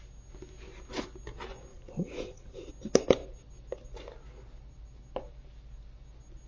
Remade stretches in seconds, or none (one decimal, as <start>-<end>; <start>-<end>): 1.7-2.7